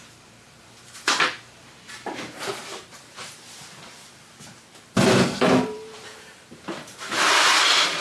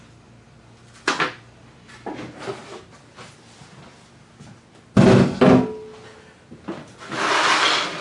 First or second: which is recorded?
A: second